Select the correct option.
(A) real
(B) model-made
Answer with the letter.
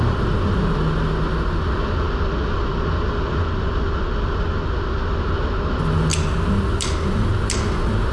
A